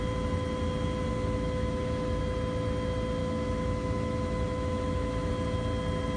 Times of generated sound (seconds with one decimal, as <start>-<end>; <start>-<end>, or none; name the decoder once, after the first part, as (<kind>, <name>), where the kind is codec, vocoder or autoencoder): 1.1-2.2 (autoencoder, DAC-VAE); 3.2-5.3